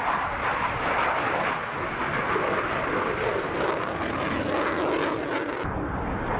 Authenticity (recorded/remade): recorded